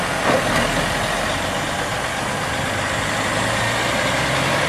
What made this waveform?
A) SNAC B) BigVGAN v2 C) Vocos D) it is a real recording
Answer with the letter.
D